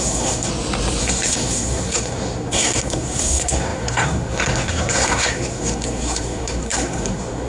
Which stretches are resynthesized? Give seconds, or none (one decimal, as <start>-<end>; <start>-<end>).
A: 0.0-0.5; 1.0-7.5